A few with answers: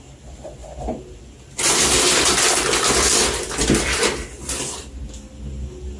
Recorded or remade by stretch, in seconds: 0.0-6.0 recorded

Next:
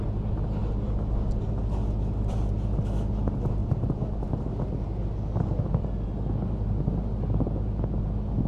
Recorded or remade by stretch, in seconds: 0.0-3.6 recorded; 3.6-4.3 remade; 4.3-8.5 recorded

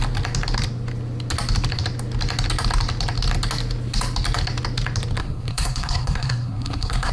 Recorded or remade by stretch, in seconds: 0.0-5.2 recorded; 5.2-7.1 remade

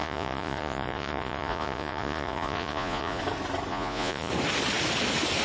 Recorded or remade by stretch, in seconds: 0.0-3.2 remade; 3.2-3.7 recorded; 3.7-4.3 remade; 4.3-5.4 recorded

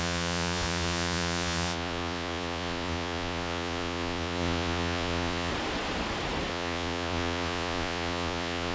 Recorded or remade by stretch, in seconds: 0.0-5.5 remade; 5.5-6.5 recorded; 6.5-8.7 remade

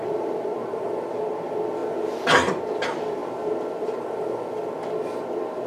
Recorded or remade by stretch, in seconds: 0.0-1.8 remade; 1.8-2.4 recorded; 2.4-5.7 remade